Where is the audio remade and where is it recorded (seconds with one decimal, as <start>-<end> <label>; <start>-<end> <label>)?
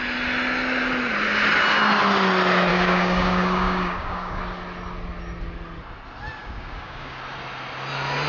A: 0.0-2.7 recorded; 2.7-4.4 remade; 4.4-6.4 recorded; 6.4-7.2 remade; 7.2-8.3 recorded